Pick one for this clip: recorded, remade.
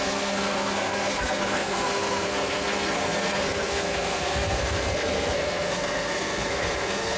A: remade